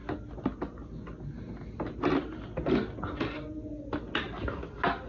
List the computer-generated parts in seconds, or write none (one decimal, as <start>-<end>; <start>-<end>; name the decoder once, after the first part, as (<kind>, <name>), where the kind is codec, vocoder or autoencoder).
none